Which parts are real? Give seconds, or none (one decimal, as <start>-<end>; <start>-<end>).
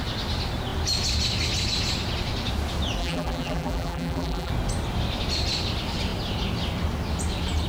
0.0-3.0; 4.5-7.7